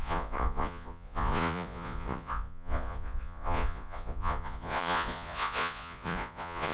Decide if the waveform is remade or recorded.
remade